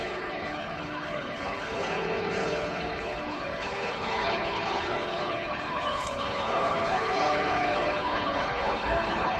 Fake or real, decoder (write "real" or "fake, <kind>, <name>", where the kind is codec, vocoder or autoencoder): fake, codec, HILCodec